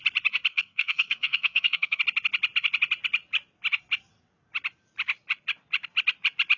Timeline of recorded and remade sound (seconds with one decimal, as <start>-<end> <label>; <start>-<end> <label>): 0.0-0.5 recorded; 0.5-2.0 remade; 2.0-6.6 recorded